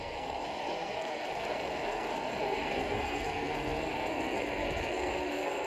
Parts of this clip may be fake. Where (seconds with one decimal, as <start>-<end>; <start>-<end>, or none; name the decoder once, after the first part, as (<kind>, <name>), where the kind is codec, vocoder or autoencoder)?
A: 0.0-5.7 (codec, SNAC)